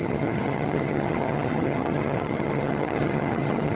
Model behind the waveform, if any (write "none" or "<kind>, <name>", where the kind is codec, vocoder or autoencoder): vocoder, HiFi-GAN